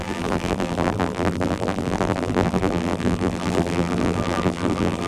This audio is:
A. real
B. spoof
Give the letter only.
B